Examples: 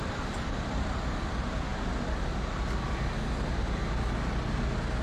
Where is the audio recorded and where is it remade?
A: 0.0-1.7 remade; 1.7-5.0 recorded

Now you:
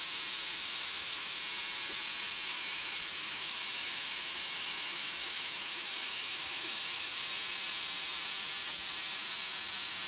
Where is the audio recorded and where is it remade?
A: 0.0-0.6 recorded; 0.6-1.4 remade; 1.4-2.5 recorded; 2.5-7.2 remade; 7.2-10.1 recorded

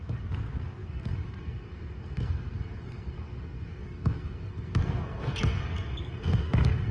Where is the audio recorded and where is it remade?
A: 0.0-6.9 remade

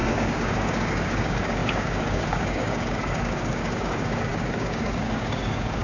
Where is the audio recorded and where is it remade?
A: 0.0-5.8 remade

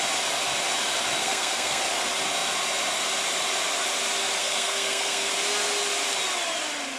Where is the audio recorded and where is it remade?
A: 0.0-1.2 recorded; 1.2-1.8 remade; 1.8-4.4 recorded; 4.4-5.3 remade; 5.3-7.0 recorded

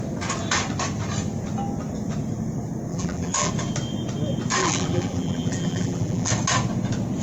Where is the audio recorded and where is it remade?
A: 0.0-2.9 recorded; 2.9-3.5 remade; 3.5-4.6 recorded; 4.6-6.3 remade; 6.3-7.2 recorded